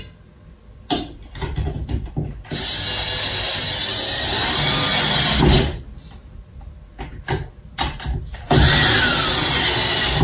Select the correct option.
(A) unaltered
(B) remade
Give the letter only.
A